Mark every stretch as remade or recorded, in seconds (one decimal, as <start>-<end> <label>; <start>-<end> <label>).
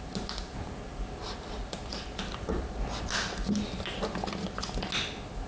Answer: 0.0-5.5 recorded